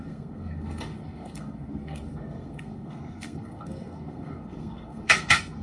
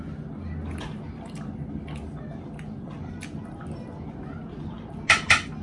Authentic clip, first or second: second